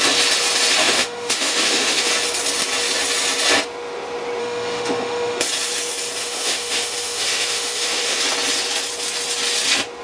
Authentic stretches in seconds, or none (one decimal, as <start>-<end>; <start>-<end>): 0.0-0.8; 2.1-4.4; 5.4-6.2; 8.2-10.0